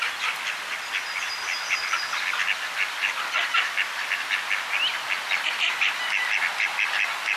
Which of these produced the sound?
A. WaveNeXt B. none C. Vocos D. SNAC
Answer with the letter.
B